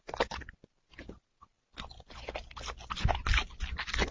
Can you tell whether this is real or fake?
real